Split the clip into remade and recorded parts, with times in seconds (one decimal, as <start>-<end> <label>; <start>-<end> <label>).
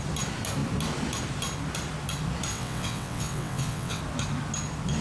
0.0-2.5 recorded; 2.5-4.0 remade; 4.0-5.0 recorded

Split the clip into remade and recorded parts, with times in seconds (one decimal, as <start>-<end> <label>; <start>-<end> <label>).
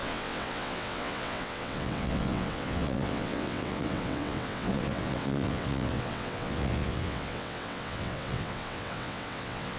0.0-9.8 remade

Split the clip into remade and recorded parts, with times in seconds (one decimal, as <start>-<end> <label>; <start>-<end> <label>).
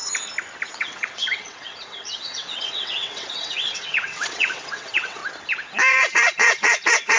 0.0-0.7 recorded; 0.7-5.2 remade; 5.2-5.9 recorded; 5.9-7.2 remade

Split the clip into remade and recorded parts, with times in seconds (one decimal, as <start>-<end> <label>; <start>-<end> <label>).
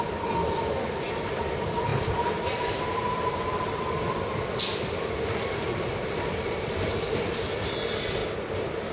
0.0-8.2 remade; 8.2-8.9 recorded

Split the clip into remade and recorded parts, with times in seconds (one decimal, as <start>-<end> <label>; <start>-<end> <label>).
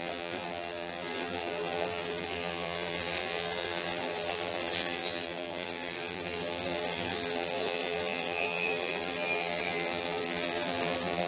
0.0-11.3 remade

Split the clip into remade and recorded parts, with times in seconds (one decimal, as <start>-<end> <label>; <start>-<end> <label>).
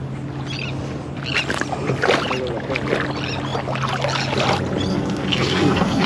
0.0-4.9 recorded; 4.9-6.1 remade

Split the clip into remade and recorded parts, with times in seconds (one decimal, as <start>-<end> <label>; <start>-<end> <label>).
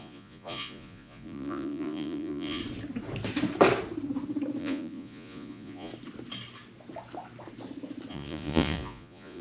0.0-2.6 remade; 2.6-4.6 recorded; 4.6-5.9 remade; 5.9-8.1 recorded; 8.1-9.4 remade